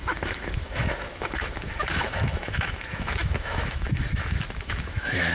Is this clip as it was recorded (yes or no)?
no